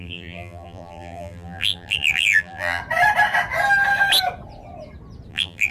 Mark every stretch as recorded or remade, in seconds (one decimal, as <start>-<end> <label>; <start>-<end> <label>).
0.0-2.8 remade; 2.8-5.3 recorded; 5.3-5.7 remade